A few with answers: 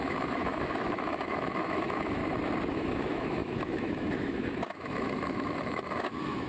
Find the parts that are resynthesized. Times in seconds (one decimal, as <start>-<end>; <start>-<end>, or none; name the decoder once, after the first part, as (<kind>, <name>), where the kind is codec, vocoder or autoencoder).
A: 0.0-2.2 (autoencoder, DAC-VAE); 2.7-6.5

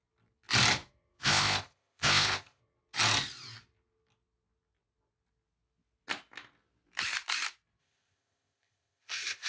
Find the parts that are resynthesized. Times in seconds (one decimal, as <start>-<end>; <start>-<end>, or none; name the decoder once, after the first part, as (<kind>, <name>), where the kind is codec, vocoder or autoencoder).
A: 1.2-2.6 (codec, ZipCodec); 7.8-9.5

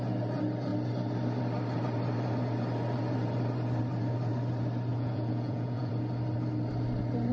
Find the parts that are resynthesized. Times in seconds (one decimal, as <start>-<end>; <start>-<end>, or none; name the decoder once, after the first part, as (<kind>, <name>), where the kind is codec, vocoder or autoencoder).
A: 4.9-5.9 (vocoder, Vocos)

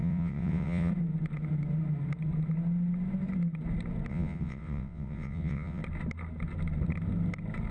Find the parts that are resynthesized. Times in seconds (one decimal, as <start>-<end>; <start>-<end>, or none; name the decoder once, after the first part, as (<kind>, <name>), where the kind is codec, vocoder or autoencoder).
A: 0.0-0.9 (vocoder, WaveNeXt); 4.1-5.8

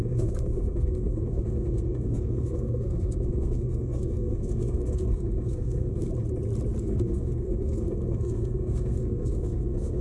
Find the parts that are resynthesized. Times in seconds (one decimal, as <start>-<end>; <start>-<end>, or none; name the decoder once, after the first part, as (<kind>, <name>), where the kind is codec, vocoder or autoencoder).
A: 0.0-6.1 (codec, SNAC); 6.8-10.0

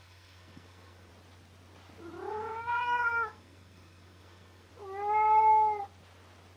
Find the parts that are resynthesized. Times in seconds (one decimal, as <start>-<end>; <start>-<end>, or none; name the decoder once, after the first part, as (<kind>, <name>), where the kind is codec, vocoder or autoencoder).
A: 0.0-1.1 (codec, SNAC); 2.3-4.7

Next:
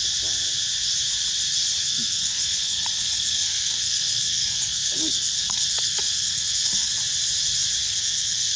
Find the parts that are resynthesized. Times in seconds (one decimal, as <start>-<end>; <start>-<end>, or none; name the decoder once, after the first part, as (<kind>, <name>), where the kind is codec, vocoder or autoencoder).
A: 1.8-6.9 (codec, SNAC); 7.8-8.6

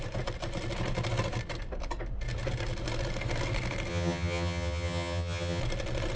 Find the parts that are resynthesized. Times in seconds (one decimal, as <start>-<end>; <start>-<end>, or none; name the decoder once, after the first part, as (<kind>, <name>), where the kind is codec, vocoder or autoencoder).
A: 3.9-5.6 (vocoder, HiFi-GAN)